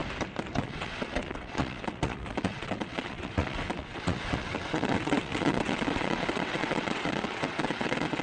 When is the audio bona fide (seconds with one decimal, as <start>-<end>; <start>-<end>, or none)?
0.0-0.6